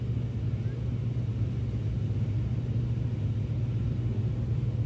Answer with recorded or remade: recorded